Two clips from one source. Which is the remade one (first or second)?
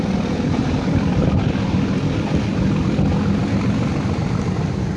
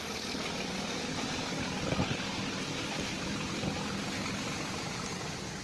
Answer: first